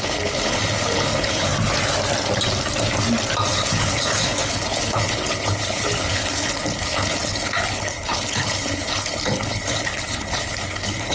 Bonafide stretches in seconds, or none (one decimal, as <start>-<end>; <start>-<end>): 1.5-3.5